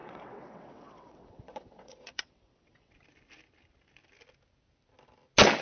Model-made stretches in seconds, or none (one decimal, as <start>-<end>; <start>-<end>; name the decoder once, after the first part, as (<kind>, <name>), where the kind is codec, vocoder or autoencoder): 0.0-2.9 (vocoder, WaveNeXt)